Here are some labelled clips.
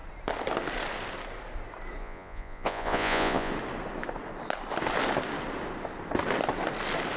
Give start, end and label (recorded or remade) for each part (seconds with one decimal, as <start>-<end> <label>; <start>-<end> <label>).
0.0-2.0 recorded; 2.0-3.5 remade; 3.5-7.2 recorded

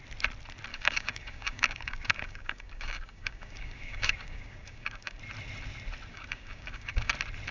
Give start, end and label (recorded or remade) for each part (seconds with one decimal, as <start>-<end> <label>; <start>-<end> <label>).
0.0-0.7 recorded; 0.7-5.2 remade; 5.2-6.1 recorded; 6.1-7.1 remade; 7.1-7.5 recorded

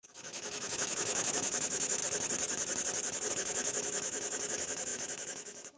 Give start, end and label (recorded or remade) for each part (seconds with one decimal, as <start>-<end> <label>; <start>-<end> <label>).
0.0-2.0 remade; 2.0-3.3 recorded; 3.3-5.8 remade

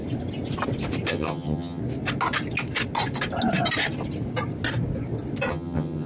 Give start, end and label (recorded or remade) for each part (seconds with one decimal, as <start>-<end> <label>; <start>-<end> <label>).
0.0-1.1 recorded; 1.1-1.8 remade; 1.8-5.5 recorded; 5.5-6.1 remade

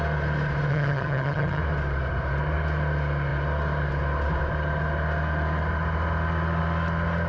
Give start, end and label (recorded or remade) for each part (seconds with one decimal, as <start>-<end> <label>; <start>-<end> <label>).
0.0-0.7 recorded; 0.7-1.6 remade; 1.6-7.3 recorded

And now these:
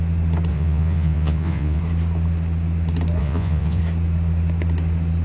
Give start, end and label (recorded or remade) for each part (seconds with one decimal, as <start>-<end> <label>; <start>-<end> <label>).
0.0-0.5 recorded; 0.5-1.8 remade; 1.8-3.2 recorded; 3.2-3.8 remade; 3.8-5.2 recorded

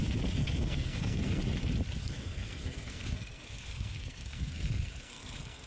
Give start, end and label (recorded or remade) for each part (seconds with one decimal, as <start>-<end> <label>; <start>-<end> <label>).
0.0-0.4 recorded; 0.4-1.4 remade; 1.4-2.0 recorded; 2.0-5.7 remade